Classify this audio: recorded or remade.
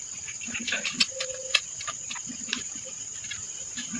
remade